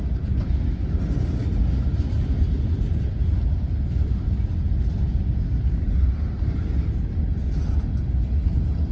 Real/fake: real